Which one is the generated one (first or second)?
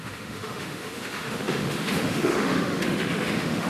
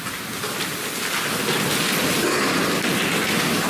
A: first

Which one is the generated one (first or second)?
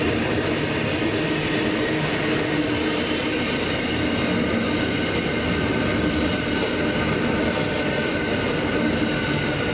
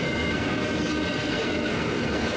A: second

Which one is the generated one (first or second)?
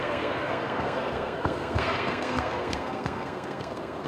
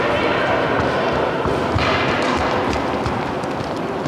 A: first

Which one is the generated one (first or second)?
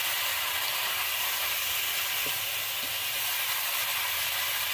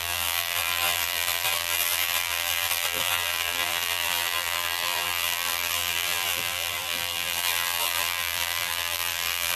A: second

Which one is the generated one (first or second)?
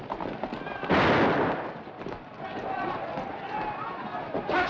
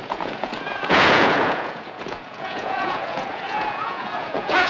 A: second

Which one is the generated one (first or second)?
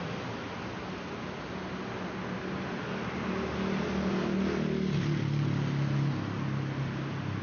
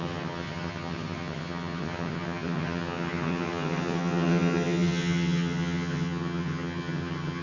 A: second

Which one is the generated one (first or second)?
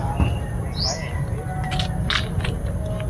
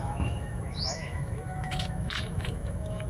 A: second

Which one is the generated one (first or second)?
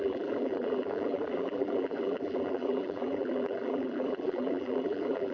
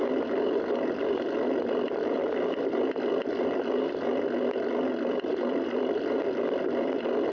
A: first